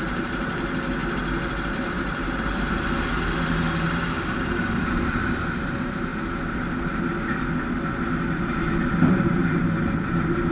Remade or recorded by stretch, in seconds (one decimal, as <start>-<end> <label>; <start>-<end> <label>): 0.0-1.0 remade; 1.0-1.5 recorded; 1.5-6.1 remade; 6.1-9.1 recorded; 9.1-10.5 remade

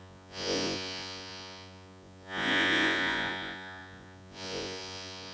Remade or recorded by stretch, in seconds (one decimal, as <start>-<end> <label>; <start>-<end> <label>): 0.0-5.3 remade

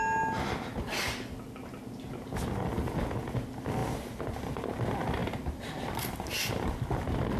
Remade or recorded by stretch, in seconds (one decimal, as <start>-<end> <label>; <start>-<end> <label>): 0.0-7.4 recorded

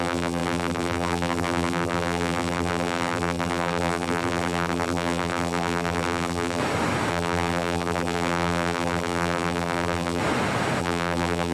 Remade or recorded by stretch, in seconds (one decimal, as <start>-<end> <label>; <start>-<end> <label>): 0.0-6.6 remade; 6.6-7.1 recorded; 7.1-10.2 remade; 10.2-10.8 recorded; 10.8-11.5 remade

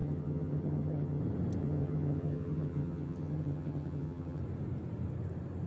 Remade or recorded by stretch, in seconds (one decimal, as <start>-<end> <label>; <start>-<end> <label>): 0.0-1.2 remade; 1.2-1.6 recorded; 1.6-4.4 remade; 4.4-5.7 recorded

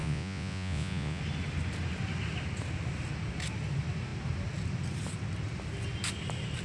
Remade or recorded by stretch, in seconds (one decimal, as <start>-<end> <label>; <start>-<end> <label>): 0.0-1.2 remade; 1.2-6.6 recorded

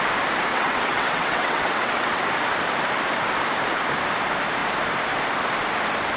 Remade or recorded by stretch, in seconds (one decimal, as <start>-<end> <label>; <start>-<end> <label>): 0.0-0.5 recorded; 0.5-2.2 remade; 2.2-6.2 recorded

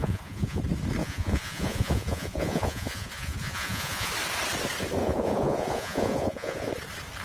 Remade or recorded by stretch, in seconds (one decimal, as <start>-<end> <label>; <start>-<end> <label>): 0.0-0.6 remade; 0.6-1.0 recorded; 1.0-4.1 remade; 4.1-5.0 recorded; 5.0-6.7 remade; 6.7-7.2 recorded